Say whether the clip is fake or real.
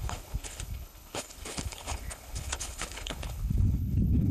fake